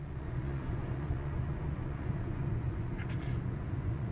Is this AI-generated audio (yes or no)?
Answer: yes